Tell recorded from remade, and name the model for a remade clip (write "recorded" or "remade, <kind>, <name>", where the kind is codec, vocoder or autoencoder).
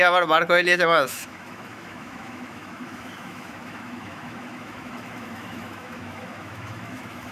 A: remade, autoencoder, DAC-VAE